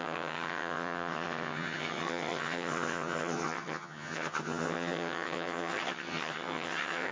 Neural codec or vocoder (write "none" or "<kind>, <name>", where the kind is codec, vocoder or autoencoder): vocoder, HiFi-GAN